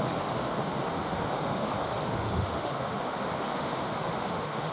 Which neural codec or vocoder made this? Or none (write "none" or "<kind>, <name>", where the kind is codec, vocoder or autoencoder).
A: autoencoder, DAC-VAE